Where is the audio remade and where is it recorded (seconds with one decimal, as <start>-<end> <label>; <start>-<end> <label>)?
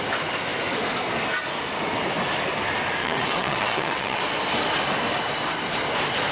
0.0-3.0 recorded; 3.0-4.2 remade; 4.2-6.3 recorded